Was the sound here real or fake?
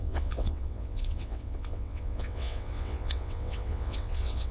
fake